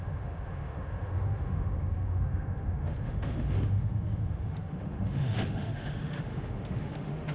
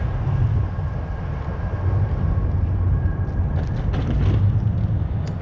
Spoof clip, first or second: first